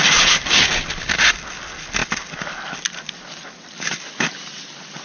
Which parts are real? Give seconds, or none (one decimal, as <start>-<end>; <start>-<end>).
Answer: 0.0-5.0